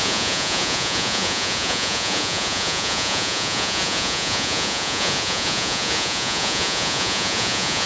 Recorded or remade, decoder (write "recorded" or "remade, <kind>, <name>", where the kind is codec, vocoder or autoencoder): remade, vocoder, Vocos